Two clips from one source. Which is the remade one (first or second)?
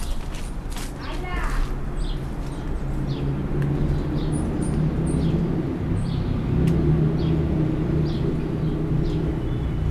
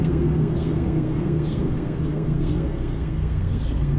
second